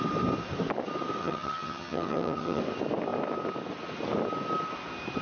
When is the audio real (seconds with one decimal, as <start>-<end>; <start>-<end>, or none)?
0.0-1.2; 2.6-5.2